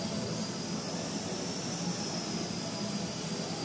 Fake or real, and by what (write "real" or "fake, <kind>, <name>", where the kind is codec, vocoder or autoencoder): real